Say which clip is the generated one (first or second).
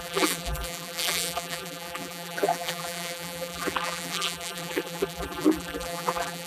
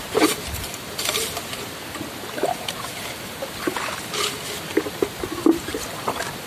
first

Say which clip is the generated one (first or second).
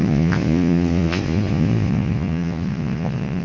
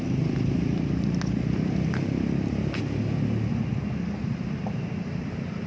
first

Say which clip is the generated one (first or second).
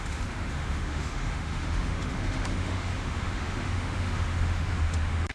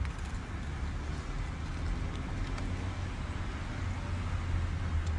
first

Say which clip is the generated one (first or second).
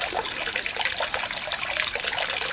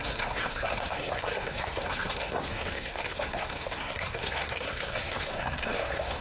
second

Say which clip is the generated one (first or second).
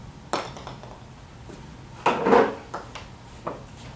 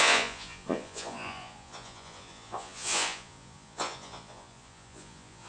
second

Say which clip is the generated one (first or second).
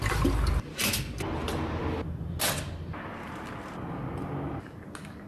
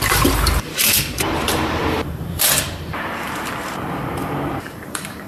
second